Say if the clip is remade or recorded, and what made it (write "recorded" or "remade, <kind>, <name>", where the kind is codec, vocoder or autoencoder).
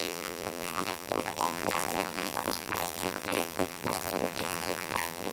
remade, vocoder, BigVGAN v2